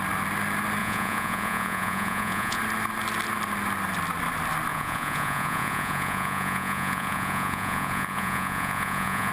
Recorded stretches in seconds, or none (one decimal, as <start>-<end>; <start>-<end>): 0.0-0.8; 2.6-4.7